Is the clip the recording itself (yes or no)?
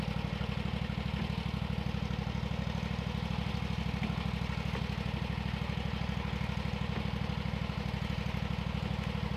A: yes